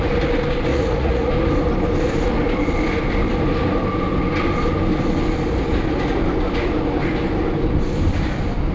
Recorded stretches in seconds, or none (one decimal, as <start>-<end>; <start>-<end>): 0.0-0.7; 1.3-8.7